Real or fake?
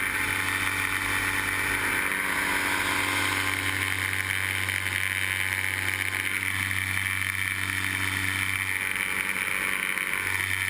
real